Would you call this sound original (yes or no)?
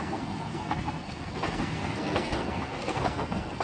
no